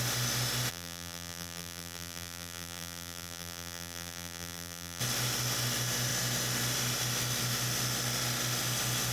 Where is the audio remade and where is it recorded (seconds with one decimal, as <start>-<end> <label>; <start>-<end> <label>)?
0.0-0.7 recorded; 0.7-5.0 remade; 5.0-9.1 recorded